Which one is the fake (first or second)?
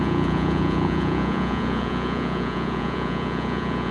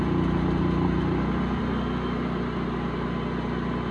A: first